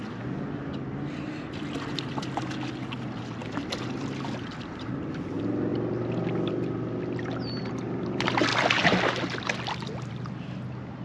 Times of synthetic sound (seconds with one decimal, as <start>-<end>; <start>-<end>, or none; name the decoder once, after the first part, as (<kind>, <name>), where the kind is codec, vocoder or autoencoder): none